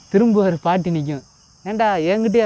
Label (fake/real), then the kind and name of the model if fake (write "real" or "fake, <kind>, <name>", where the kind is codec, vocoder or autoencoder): real